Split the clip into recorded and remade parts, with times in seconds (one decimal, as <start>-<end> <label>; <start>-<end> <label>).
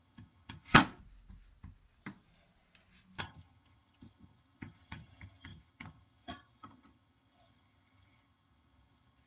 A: 0.0-0.8 remade; 0.8-3.2 recorded; 3.2-9.3 remade